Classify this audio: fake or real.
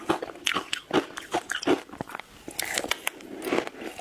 real